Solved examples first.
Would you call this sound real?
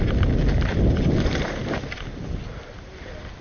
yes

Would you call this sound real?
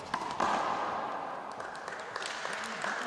yes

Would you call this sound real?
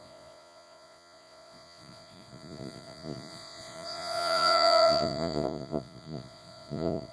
no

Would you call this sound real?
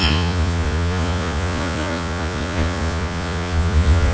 no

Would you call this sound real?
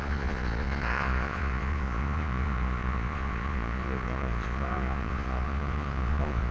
no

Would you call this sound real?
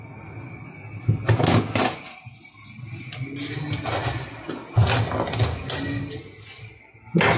yes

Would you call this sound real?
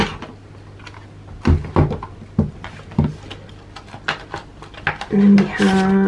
yes